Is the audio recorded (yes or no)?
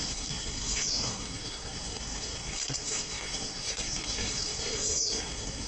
no